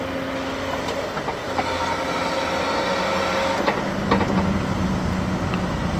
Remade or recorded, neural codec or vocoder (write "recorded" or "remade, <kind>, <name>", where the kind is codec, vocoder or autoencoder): recorded